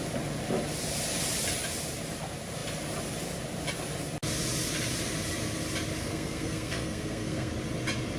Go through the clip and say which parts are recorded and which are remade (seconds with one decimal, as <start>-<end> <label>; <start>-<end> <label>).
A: 0.0-6.0 recorded; 6.0-7.5 remade; 7.5-8.2 recorded